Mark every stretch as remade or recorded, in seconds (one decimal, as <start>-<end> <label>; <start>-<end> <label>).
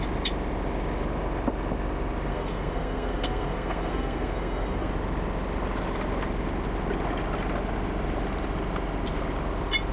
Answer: 0.0-2.3 recorded; 2.3-4.9 remade; 4.9-9.9 recorded